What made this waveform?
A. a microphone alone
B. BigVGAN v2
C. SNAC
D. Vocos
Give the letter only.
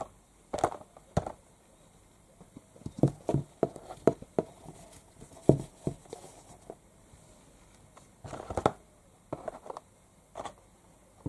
A